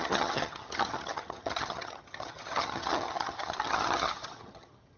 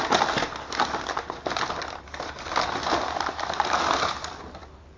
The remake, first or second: first